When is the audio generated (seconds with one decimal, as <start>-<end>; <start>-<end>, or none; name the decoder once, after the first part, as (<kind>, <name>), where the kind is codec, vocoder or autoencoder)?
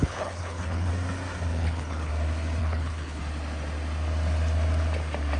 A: 0.0-0.9 (codec, HILCodec); 1.5-2.1; 2.6-3.2